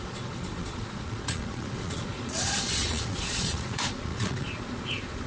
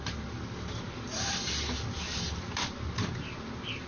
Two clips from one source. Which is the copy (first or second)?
first